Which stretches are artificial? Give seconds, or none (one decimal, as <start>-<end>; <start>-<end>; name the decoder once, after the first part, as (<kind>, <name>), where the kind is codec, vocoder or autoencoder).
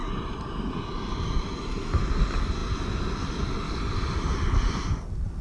none